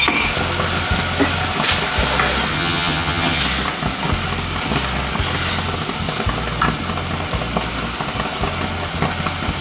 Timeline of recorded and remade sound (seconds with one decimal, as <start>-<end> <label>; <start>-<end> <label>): 0.0-2.5 recorded; 2.5-3.4 remade; 3.4-9.6 recorded